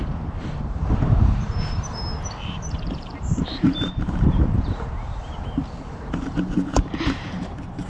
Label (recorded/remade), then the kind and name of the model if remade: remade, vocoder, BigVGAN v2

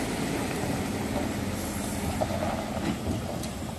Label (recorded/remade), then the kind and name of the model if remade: recorded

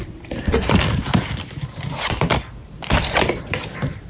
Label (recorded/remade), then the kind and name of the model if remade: remade, vocoder, BigVGAN v2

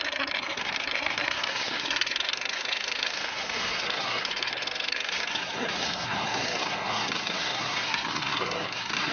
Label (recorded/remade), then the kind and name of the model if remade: remade, codec, SNAC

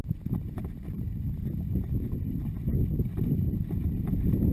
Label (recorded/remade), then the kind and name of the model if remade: recorded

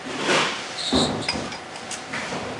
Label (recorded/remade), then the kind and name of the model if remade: remade, vocoder, BigVGAN v2